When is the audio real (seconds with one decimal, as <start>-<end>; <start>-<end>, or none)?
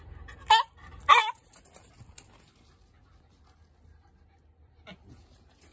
0.0-5.7